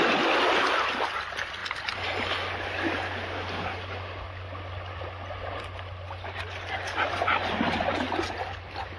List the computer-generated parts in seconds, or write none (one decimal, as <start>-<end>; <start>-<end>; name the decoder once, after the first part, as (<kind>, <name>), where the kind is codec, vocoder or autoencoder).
none